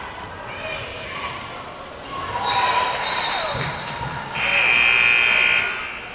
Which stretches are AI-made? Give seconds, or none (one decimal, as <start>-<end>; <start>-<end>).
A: 0.9-4.0

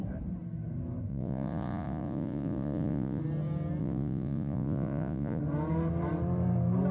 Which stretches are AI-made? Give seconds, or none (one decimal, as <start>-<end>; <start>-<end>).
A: 1.1-3.2; 3.8-5.4

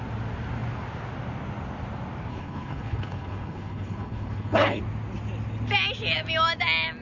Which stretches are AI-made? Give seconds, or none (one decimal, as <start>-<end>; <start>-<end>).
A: 2.3-4.8

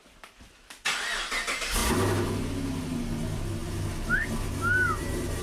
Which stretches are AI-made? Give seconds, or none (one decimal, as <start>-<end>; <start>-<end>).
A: none

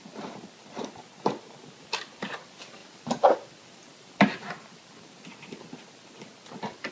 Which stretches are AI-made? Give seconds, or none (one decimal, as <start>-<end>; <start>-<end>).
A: none

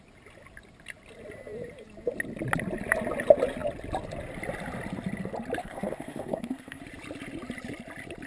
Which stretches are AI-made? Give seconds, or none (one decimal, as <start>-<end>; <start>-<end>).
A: 5.6-6.8

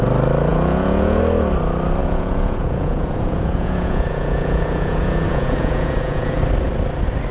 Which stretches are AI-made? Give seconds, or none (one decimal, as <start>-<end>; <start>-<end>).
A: 0.5-1.2; 2.0-6.4

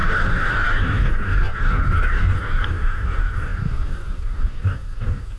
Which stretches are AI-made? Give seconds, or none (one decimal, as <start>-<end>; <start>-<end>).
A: 0.0-5.4